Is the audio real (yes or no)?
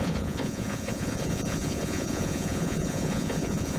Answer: no